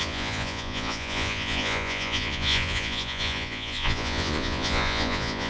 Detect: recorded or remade remade